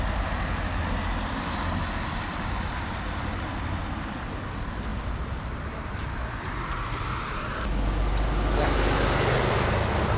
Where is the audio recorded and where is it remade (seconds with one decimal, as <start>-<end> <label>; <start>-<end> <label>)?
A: 0.0-4.9 recorded; 4.9-6.1 remade; 6.1-10.2 recorded